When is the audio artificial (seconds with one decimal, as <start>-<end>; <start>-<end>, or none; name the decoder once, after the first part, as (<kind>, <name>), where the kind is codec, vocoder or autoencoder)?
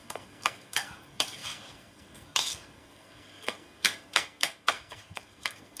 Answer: 0.0-5.8 (codec, SNAC)